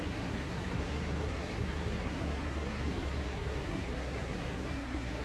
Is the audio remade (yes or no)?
yes